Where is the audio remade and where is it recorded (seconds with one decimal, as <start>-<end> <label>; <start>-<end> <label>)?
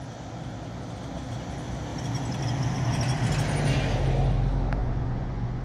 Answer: 0.0-4.8 recorded; 4.8-5.6 remade